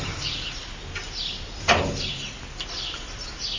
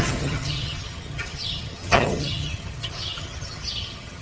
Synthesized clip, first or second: second